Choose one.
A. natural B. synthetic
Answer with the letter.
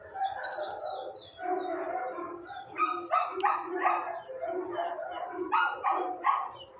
A